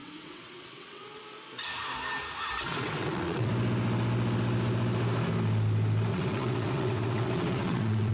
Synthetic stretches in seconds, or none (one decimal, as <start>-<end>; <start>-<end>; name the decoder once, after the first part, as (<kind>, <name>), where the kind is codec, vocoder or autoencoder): 0.0-1.2 (vocoder, WaveNeXt); 2.7-3.5; 6.1-8.1